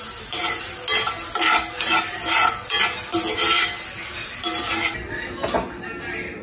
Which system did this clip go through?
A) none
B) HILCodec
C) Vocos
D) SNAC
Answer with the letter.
A